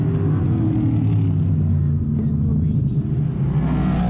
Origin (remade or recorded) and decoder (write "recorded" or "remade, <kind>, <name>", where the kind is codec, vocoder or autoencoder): recorded